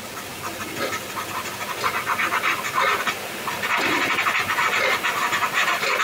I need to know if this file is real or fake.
real